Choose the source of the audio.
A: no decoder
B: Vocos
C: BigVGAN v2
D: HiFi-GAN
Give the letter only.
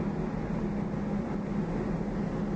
A